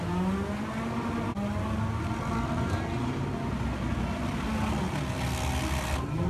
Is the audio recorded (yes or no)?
yes